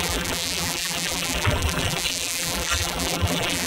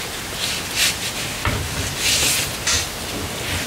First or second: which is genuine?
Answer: second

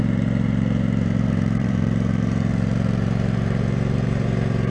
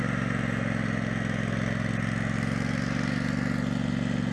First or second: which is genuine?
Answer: second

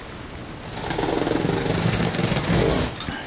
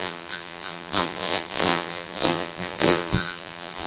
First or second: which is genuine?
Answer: first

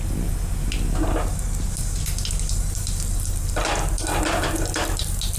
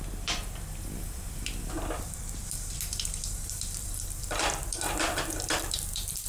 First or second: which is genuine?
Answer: first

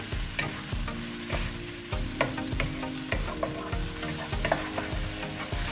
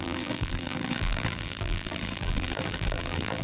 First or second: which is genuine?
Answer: first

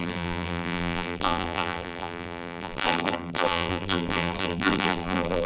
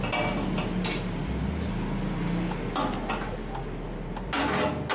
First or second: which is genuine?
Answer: second